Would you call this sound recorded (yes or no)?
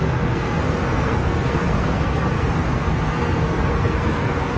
no